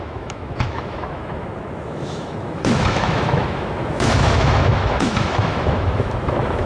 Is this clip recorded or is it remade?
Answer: remade